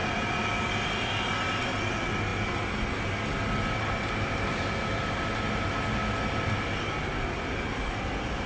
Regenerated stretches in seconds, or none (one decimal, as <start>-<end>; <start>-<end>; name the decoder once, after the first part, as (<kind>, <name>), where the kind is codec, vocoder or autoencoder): none